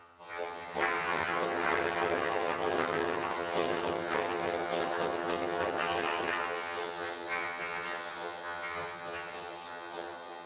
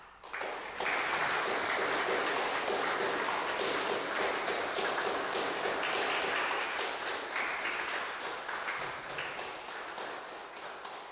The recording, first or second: second